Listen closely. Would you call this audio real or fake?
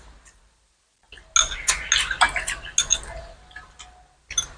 real